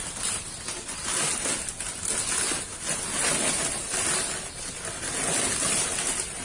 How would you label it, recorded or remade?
recorded